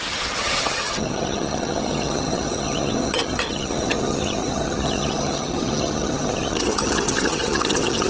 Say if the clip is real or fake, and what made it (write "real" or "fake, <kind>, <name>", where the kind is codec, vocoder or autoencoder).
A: fake, vocoder, HiFi-GAN